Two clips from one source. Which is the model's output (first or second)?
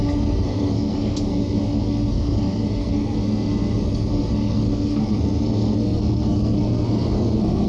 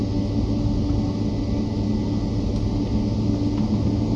first